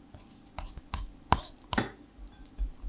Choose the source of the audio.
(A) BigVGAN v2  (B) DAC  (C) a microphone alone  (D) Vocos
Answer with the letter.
C